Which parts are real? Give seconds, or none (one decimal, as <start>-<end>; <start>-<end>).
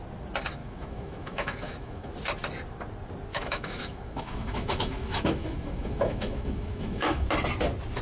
0.0-0.6; 2.1-3.3; 7.3-8.0